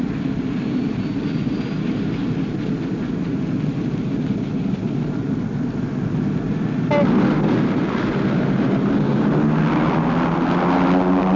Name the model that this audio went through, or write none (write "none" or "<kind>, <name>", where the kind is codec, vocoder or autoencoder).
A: none